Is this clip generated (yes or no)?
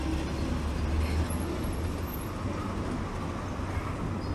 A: no